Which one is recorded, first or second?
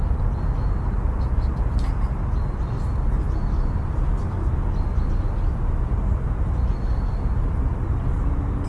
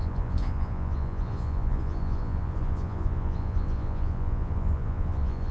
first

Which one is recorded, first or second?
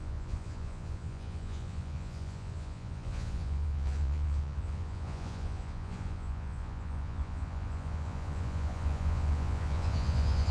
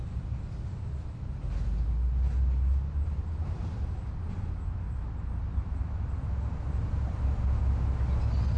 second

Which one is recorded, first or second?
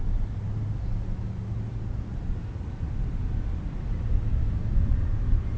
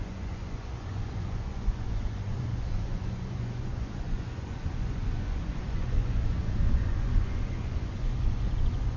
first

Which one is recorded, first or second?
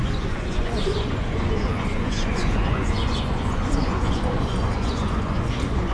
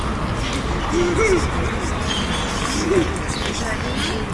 second